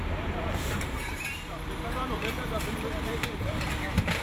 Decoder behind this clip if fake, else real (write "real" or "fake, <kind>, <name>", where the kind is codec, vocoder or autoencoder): fake, vocoder, BigVGAN v2